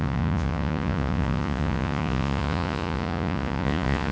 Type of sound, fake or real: fake